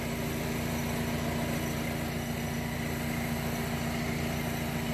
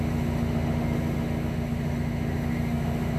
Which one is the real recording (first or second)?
first